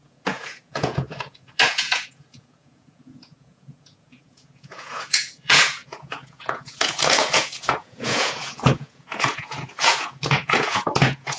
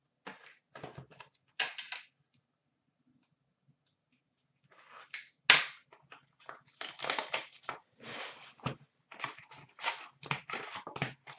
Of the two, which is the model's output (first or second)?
first